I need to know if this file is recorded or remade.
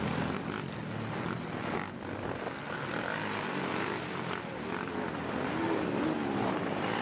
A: recorded